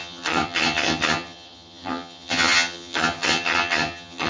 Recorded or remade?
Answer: remade